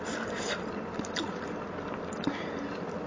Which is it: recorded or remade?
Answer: recorded